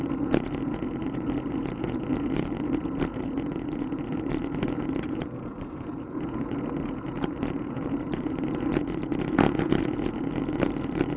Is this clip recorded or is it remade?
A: remade